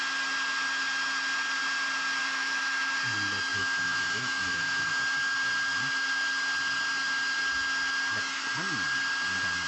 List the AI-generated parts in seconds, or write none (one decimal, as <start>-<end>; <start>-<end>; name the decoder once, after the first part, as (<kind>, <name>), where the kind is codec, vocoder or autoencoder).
2.2-2.9 (autoencoder, DAC-VAE); 3.5-4.9